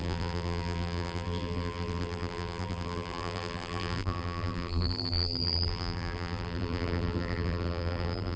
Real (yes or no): no